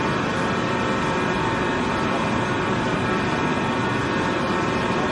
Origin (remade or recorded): recorded